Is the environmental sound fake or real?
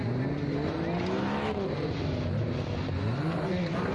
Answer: real